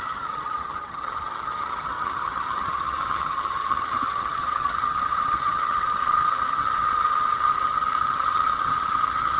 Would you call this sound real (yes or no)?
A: no